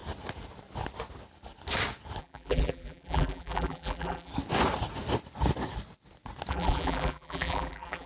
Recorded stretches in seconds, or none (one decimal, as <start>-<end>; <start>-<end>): 0.0-2.2; 4.3-6.5